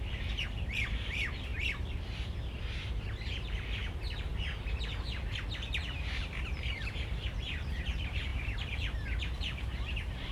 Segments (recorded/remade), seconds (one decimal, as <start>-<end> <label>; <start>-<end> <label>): 0.0-4.3 remade; 4.3-5.0 recorded; 5.0-10.3 remade